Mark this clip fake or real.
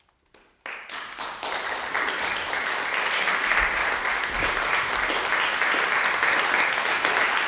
real